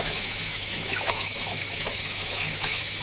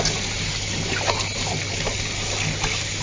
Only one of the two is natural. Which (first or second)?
second